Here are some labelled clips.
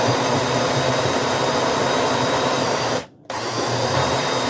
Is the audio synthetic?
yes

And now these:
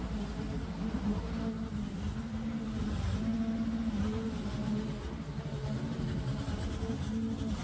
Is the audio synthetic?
no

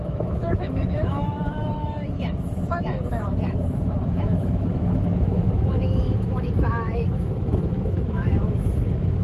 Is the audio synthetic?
yes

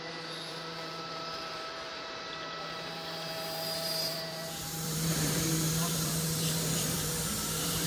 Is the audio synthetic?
yes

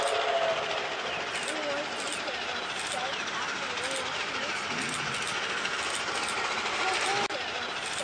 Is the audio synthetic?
no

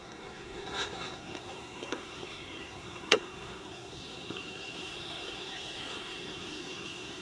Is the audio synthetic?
yes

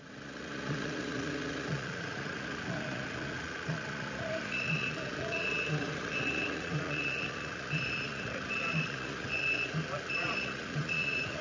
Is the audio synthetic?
yes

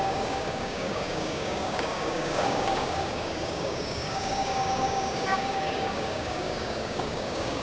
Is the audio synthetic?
yes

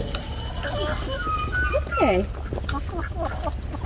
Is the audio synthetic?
no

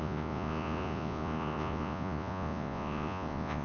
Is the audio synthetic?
yes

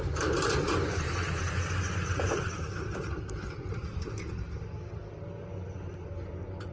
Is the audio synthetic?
yes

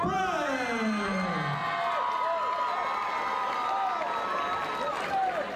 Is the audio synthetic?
no